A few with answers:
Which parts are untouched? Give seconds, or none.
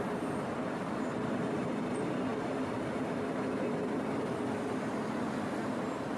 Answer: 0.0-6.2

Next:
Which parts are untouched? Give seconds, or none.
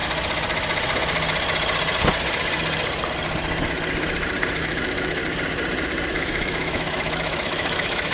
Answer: 0.0-4.6; 5.2-6.1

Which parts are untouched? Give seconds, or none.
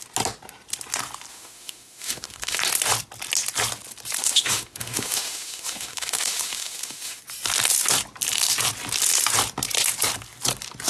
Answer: 0.0-1.3; 2.6-4.2; 7.2-10.9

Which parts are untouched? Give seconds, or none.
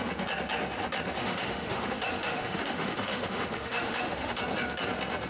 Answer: 0.0-1.2; 4.4-5.3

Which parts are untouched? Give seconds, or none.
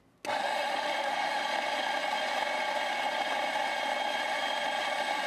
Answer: 0.0-0.4; 1.4-5.3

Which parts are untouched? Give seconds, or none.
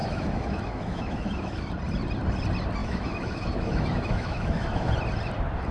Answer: 1.7-2.8; 4.9-5.7